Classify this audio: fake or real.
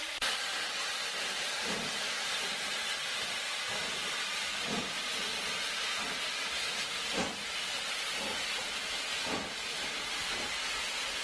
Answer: real